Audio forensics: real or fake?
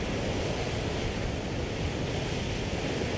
real